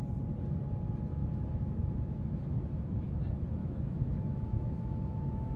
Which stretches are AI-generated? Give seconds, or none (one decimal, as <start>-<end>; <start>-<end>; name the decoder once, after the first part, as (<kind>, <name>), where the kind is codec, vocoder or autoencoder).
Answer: 1.1-3.2 (autoencoder, DAC-VAE); 3.6-5.6